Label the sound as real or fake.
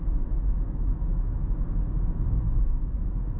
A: fake